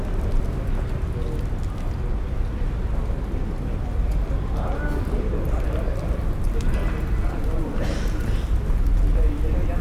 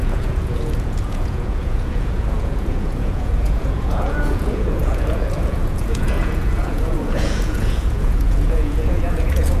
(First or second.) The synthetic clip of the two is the second